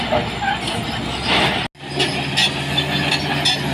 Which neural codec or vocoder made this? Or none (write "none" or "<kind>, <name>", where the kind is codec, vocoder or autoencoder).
none